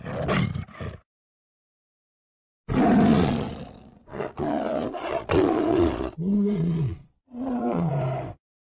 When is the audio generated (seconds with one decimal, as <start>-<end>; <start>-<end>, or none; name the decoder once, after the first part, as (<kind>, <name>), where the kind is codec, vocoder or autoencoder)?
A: 3.1-7.9 (vocoder, Vocos)